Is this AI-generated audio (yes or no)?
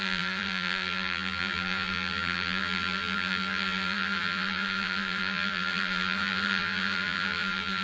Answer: yes